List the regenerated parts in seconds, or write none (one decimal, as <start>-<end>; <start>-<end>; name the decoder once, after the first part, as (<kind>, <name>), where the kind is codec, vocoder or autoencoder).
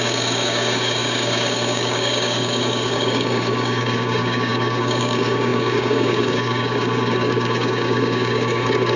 0.0-9.0 (codec, DAC)